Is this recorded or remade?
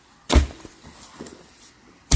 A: remade